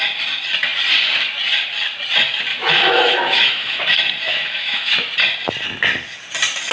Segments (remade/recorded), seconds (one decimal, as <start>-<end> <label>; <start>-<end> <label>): 0.0-2.5 recorded; 2.5-3.8 remade; 3.8-4.3 recorded; 4.3-5.1 remade; 5.1-6.7 recorded